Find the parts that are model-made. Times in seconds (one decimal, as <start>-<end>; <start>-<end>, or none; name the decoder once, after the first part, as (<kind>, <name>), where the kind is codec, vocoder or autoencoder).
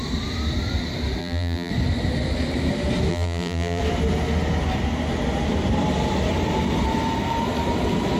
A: 1.2-1.7 (vocoder, BigVGAN v2); 3.1-3.8